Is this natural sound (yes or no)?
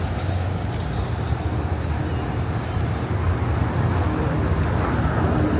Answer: yes